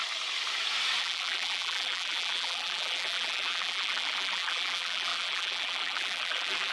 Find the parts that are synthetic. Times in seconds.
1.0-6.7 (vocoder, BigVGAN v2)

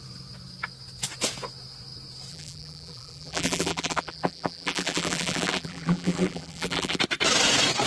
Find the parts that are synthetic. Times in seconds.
2.3-7.0 (vocoder, BigVGAN v2)

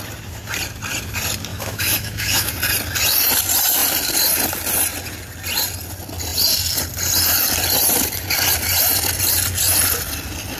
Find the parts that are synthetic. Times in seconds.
1.5-2.5 (autoencoder, DAC-VAE)

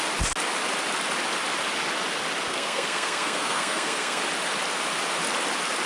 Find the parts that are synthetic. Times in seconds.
2.5-4.2 (codec, SNAC)

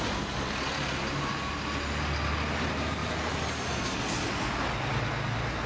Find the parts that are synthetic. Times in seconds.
none